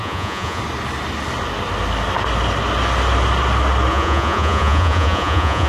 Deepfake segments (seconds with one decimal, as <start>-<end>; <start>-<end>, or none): 0.0-0.6; 3.9-5.7